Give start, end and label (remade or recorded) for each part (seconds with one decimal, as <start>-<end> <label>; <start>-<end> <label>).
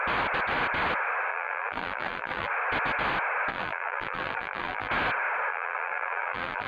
0.0-1.3 recorded; 1.3-2.5 remade; 2.5-3.5 recorded; 3.5-4.9 remade; 4.9-5.5 recorded; 5.5-6.7 remade